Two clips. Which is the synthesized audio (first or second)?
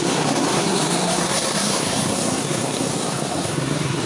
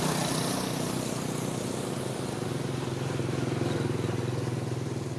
first